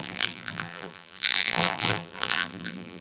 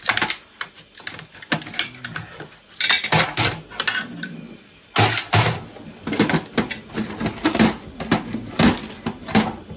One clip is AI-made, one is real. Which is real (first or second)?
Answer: second